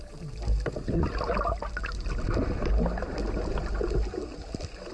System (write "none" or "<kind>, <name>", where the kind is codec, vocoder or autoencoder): none